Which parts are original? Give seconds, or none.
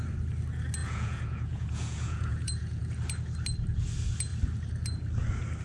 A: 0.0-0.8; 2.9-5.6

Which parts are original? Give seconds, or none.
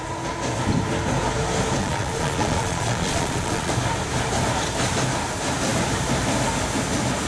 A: 0.0-1.8; 3.7-7.3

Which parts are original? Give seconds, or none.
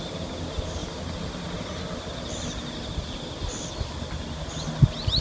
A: 0.0-5.2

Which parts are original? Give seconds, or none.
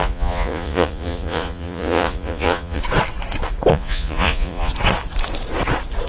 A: 2.8-3.7; 4.7-6.1